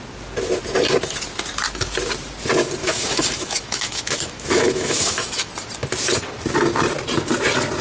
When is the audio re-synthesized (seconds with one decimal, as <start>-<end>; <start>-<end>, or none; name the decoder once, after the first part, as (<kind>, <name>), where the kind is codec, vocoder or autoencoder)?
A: 2.8-5.5 (autoencoder, DAC-VAE)